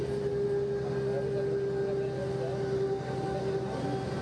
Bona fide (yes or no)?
yes